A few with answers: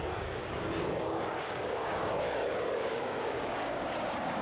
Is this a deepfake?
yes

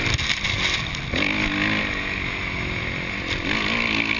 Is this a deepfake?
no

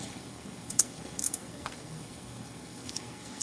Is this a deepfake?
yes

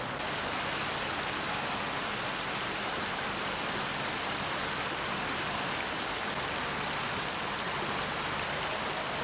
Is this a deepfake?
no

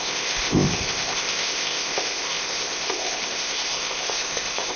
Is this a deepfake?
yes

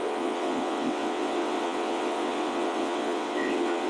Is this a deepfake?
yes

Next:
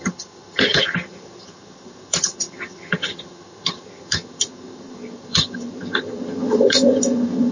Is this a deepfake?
yes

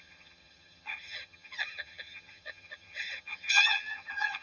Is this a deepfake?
yes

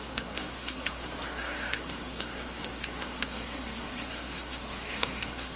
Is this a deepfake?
yes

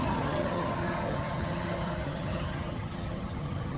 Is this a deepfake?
yes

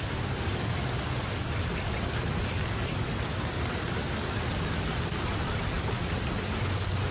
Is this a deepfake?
no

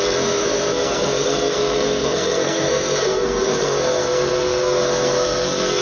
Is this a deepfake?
yes